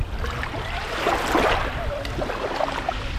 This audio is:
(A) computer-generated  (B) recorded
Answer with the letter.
B